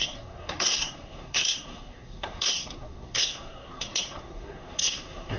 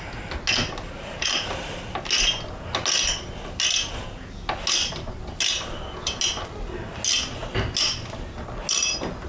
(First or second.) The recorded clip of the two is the second